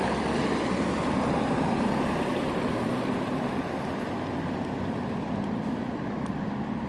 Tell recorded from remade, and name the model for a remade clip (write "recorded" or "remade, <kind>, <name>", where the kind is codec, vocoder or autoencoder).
remade, vocoder, BigVGAN v2